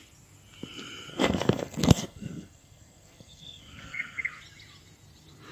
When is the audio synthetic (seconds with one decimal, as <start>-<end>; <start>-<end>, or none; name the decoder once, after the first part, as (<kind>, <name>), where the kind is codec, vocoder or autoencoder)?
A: 1.1-4.4 (codec, SNAC)